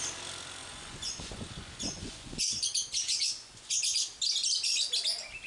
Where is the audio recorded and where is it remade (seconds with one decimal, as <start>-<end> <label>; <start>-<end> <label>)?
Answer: 0.0-0.6 recorded; 0.6-3.8 remade; 3.8-5.5 recorded